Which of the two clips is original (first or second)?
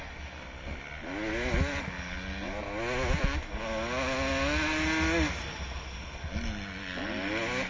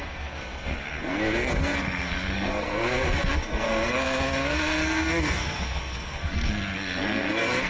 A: first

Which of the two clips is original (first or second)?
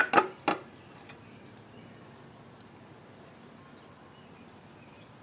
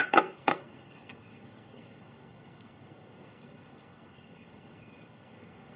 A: first